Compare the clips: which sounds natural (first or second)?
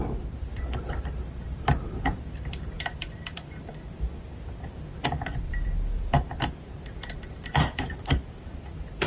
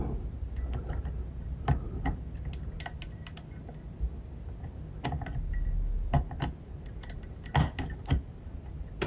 second